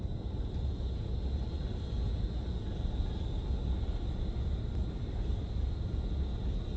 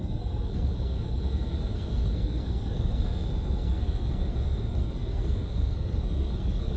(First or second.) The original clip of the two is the first